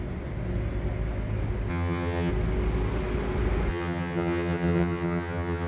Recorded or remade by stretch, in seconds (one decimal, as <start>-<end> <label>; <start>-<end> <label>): 0.0-1.7 recorded; 1.7-2.3 remade; 2.3-3.7 recorded; 3.7-5.7 remade